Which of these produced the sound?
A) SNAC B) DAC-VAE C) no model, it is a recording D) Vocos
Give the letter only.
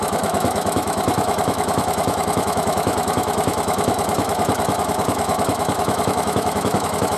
B